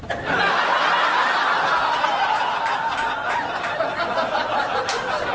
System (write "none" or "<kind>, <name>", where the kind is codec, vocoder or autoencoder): none